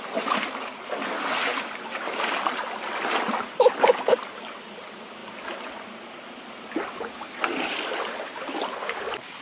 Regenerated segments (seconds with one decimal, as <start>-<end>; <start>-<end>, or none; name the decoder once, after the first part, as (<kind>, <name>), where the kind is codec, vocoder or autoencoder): none